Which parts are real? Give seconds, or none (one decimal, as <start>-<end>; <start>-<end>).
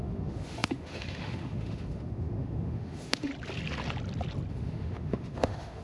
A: 3.3-4.5